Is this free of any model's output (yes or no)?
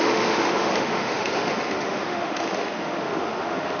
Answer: no